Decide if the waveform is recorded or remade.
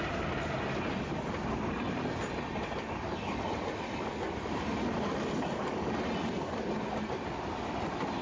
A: recorded